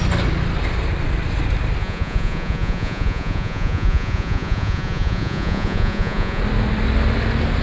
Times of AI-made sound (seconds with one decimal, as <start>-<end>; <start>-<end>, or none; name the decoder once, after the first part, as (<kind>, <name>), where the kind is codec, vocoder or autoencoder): 1.8-6.4 (vocoder, Vocos)